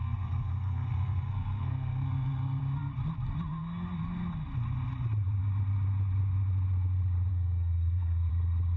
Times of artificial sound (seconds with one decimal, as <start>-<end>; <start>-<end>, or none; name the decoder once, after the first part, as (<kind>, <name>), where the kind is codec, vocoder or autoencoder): 0.0-2.6 (codec, SNAC); 7.3-8.3